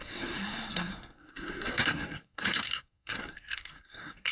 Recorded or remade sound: remade